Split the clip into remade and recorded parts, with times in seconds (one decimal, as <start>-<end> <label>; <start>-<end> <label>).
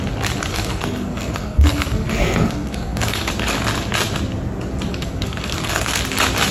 0.0-0.5 recorded; 0.5-3.3 remade; 3.3-4.9 recorded; 4.9-6.0 remade; 6.0-6.5 recorded